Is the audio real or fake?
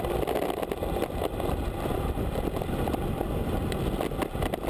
real